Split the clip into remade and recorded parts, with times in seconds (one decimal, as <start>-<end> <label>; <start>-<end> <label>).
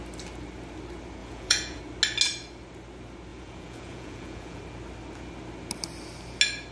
0.0-1.2 recorded; 1.2-1.8 remade; 1.8-3.3 recorded; 3.3-4.6 remade; 4.6-6.7 recorded